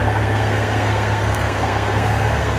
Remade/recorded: remade